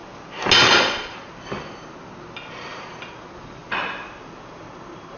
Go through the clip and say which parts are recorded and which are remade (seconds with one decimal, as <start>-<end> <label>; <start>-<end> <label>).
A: 0.0-5.2 recorded